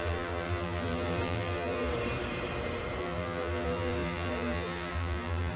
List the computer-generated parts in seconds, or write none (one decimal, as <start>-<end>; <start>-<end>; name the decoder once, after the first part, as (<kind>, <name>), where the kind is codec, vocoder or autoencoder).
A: 0.0-1.9 (vocoder, BigVGAN v2); 3.0-5.6